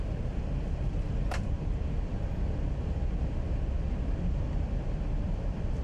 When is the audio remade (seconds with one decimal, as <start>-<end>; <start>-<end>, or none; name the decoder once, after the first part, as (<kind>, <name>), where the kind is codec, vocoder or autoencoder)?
0.0-5.8 (vocoder, BigVGAN v2)